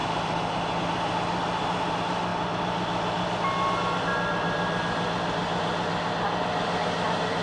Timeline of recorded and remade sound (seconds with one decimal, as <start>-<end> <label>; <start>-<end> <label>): 0.0-7.4 recorded